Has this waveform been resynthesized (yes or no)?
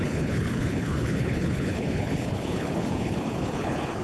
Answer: yes